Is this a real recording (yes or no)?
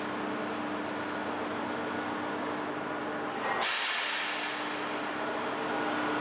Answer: yes